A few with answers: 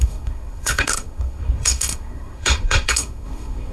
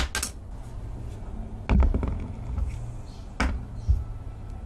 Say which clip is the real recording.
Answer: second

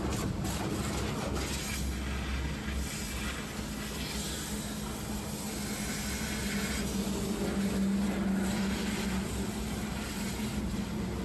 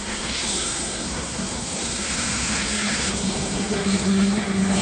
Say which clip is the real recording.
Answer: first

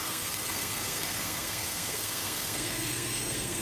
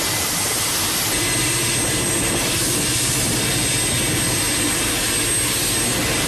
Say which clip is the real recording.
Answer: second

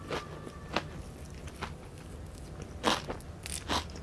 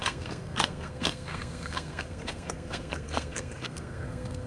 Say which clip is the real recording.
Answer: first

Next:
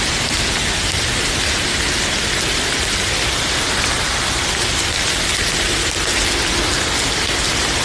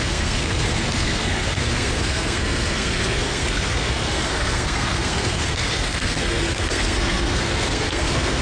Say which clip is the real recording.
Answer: first